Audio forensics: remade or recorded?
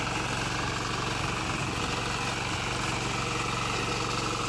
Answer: recorded